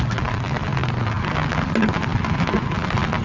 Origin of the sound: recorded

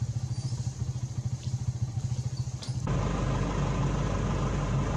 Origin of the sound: recorded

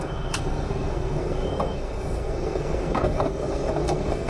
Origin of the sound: remade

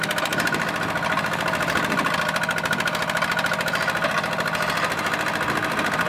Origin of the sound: recorded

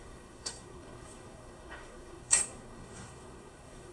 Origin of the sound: remade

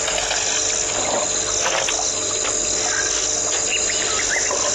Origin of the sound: recorded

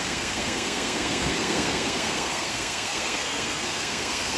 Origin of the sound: remade